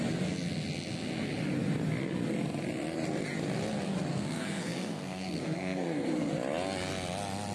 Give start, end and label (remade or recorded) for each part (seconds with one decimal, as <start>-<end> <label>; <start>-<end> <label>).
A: 0.0-4.1 recorded; 4.1-6.3 remade; 6.3-7.5 recorded